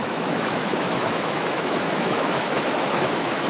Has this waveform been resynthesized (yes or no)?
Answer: yes